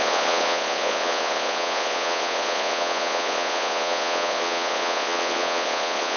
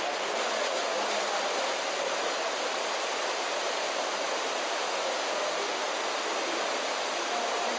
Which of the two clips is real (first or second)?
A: second